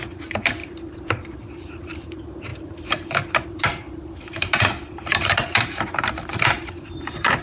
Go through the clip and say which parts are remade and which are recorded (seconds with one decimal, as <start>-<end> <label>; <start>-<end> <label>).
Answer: 0.0-7.4 remade